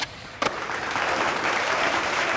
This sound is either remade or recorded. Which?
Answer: remade